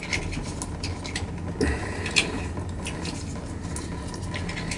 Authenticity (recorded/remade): recorded